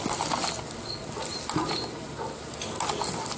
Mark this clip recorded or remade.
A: recorded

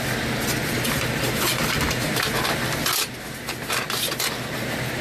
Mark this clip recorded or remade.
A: recorded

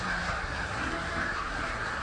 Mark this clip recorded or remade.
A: remade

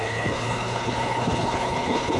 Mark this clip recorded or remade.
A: remade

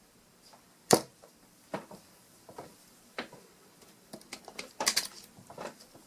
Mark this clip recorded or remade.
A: remade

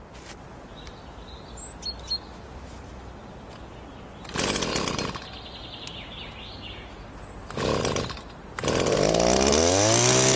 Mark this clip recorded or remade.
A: recorded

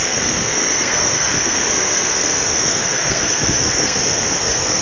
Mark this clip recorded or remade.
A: remade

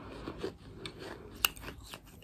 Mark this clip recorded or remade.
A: recorded